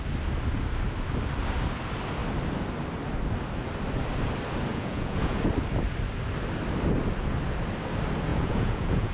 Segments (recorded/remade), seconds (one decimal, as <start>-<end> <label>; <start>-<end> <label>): 0.0-4.7 recorded; 4.7-5.4 remade; 5.4-8.3 recorded; 8.3-9.1 remade